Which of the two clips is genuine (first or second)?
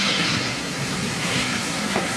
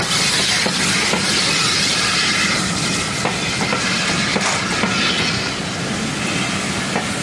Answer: second